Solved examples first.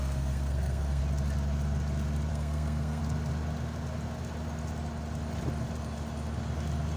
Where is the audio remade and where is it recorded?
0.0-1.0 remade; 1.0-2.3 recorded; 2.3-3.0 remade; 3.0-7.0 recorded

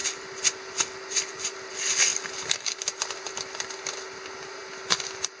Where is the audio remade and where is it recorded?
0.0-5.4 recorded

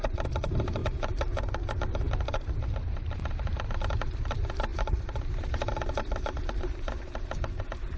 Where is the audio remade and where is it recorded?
0.0-8.0 remade

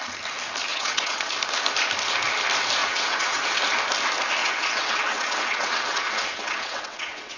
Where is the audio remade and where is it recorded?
0.0-0.7 recorded; 0.7-1.3 remade; 1.3-2.8 recorded; 2.8-3.6 remade; 3.6-4.4 recorded; 4.4-7.4 remade